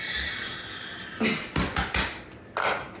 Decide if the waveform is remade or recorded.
recorded